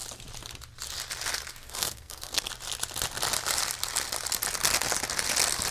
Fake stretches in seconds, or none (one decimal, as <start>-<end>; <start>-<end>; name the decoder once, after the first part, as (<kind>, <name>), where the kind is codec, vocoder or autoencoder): 1.5-2.5 (codec, SNAC)